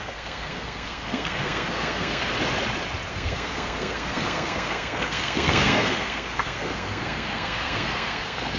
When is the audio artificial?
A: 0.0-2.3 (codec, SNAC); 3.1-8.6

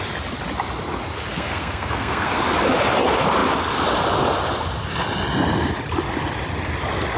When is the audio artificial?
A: 1.3-2.4 (codec, SNAC)

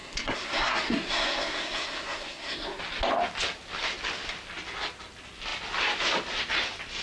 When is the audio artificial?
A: 0.0-2.8 (codec, SNAC)

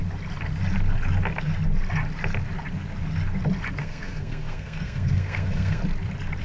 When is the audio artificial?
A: 3.8-5.8 (codec, SNAC)